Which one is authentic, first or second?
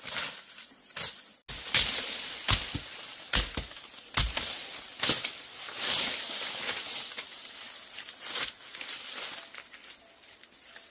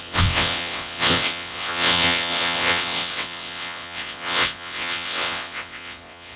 first